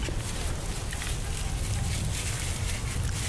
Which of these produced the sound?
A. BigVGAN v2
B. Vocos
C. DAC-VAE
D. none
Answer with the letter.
D